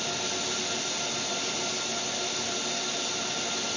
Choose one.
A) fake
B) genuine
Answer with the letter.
B